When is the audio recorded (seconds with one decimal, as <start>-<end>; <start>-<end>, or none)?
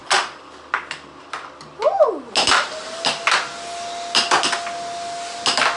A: 0.0-5.8